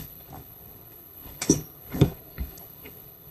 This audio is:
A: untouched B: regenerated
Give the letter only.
B